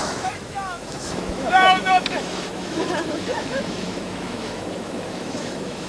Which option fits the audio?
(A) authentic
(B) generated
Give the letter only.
B